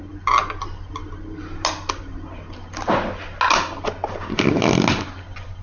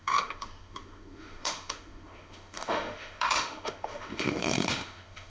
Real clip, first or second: first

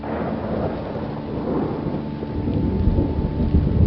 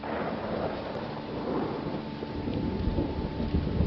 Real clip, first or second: first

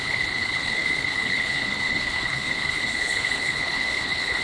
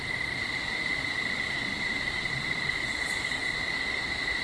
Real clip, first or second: second